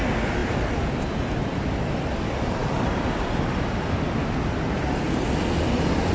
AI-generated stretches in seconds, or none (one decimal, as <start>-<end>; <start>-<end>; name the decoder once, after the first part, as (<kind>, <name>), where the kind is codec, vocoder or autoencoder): 0.4-1.8 (vocoder, BigVGAN v2); 2.6-5.4